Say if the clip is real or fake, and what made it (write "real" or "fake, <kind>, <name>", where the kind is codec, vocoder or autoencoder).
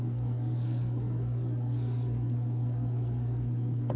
fake, codec, SNAC